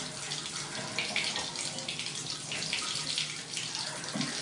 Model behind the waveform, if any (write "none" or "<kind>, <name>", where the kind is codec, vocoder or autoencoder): none